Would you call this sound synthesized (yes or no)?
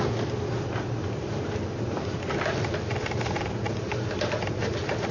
no